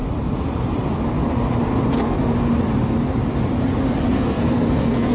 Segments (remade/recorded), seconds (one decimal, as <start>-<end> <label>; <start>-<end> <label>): 0.0-1.9 recorded; 1.9-2.3 remade; 2.3-4.1 recorded; 4.1-5.1 remade